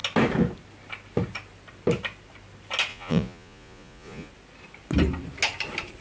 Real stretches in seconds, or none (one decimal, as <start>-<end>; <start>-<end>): 0.0-2.9; 4.3-6.0

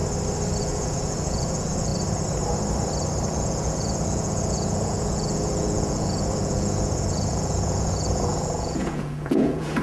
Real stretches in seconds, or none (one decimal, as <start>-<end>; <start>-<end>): 0.0-0.6; 1.9-3.3

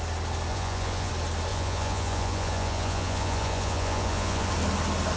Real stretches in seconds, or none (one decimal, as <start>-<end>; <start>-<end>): 0.0-0.5; 1.1-1.5; 4.5-5.2

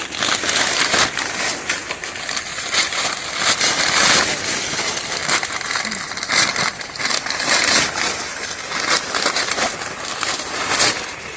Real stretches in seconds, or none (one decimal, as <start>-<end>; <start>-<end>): 0.0-2.5; 3.2-11.4